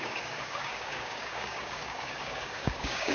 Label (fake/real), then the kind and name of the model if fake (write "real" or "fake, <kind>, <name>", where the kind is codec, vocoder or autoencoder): fake, codec, DAC